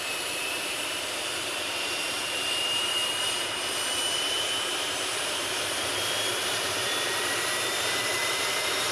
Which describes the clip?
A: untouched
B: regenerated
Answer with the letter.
B